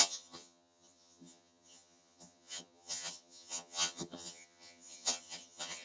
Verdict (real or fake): fake